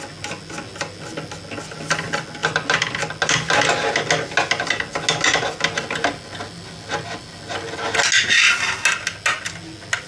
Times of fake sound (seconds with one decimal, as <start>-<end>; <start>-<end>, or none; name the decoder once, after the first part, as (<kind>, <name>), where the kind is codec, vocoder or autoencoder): none